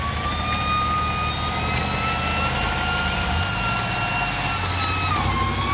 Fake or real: real